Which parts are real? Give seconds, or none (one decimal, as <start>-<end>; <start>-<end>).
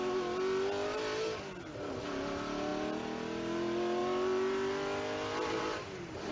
0.0-6.3